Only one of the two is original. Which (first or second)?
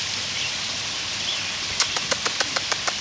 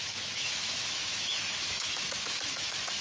first